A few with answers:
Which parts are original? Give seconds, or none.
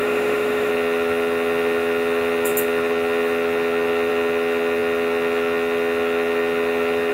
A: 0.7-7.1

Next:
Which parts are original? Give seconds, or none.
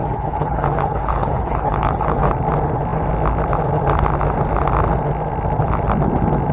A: 2.3-6.5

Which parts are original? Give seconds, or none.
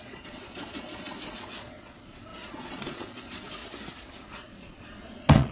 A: 3.6-4.1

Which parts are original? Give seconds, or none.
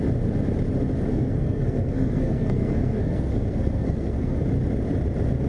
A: 0.0-1.1; 4.4-5.5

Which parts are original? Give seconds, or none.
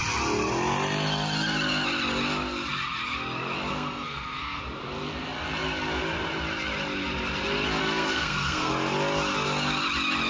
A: 0.0-3.7; 4.6-7.8; 8.7-10.3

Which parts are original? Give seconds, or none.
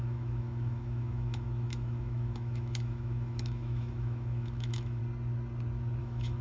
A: 5.0-6.0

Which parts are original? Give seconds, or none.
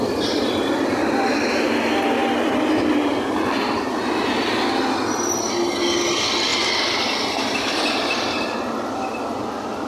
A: 0.0-9.9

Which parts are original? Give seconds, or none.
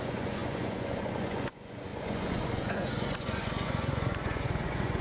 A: none